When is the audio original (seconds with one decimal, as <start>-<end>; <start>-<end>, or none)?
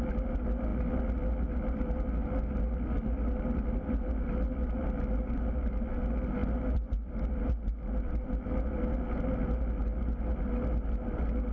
0.0-11.5